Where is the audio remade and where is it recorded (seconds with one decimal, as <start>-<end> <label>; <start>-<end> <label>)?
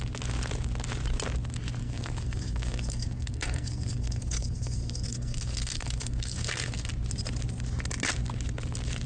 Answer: 0.0-1.8 recorded; 1.8-6.9 remade; 6.9-9.1 recorded